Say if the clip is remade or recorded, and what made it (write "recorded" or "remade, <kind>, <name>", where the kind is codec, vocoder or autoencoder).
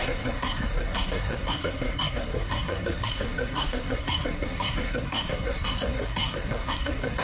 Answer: remade, codec, SNAC